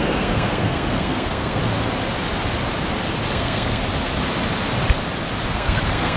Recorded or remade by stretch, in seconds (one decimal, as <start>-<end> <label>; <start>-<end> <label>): 0.0-1.6 remade; 1.6-3.3 recorded; 3.3-3.8 remade; 3.8-5.5 recorded; 5.5-6.2 remade